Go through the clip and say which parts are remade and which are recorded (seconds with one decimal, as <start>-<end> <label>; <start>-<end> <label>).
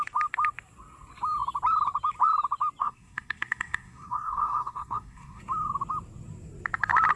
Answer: 0.0-2.8 recorded; 2.8-5.4 remade; 5.4-7.2 recorded